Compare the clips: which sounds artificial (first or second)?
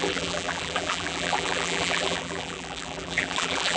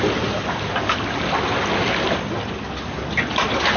first